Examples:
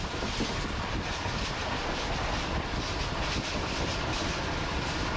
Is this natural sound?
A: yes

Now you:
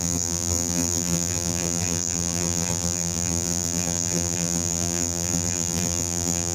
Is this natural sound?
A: no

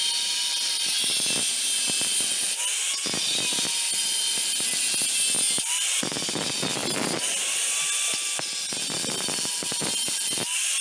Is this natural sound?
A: yes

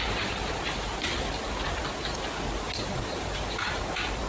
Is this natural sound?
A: yes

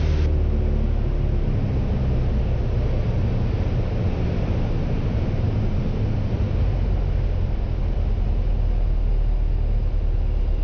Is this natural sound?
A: yes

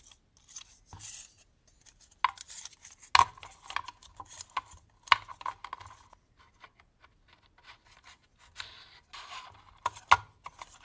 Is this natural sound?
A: yes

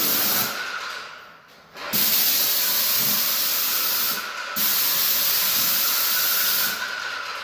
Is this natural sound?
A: yes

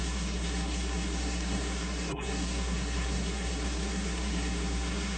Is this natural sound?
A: no